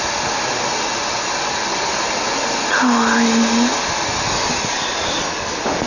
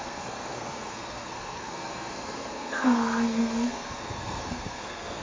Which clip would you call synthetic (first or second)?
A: second